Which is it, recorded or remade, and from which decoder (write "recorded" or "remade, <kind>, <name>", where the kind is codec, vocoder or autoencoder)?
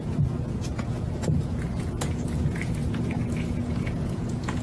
remade, vocoder, Vocos